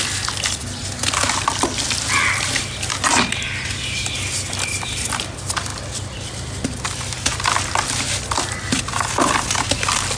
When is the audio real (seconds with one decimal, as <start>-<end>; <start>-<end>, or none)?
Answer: 0.0-10.2